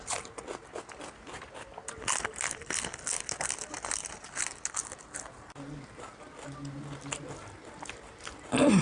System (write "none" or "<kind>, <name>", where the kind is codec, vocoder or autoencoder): none